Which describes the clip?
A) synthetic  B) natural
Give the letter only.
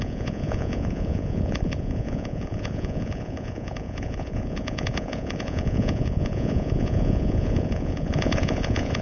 A